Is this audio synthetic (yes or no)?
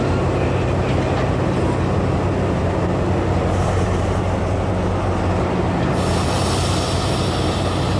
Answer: no